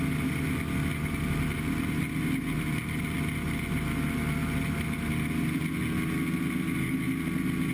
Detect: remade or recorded recorded